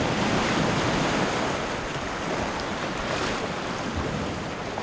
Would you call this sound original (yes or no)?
yes